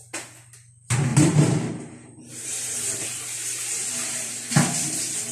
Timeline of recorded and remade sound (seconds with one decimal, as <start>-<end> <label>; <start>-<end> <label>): 0.0-1.1 recorded; 1.1-4.3 remade; 4.3-5.3 recorded